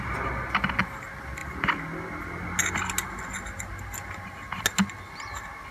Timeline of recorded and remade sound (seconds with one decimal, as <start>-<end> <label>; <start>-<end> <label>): 0.0-5.7 recorded